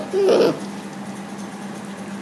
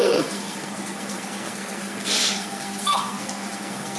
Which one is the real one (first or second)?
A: first